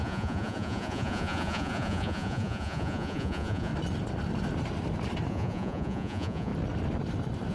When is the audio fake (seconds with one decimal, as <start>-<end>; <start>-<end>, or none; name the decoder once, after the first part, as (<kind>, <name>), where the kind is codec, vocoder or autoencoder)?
0.0-3.7 (vocoder, Vocos); 5.3-6.5